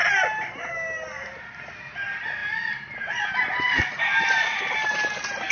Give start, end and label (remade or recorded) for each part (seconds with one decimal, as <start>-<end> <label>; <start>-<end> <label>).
0.0-5.5 recorded